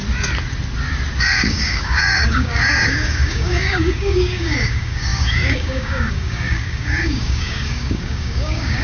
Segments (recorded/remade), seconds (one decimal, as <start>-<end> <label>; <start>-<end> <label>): 0.0-1.2 recorded; 1.2-8.8 remade